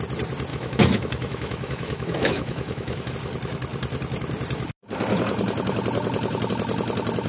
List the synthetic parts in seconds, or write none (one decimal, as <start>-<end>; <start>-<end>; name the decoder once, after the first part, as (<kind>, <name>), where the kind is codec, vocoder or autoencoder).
0.5-3.1 (autoencoder, DAC-VAE)